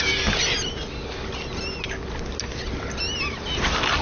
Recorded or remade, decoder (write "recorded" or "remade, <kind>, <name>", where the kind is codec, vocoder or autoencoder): recorded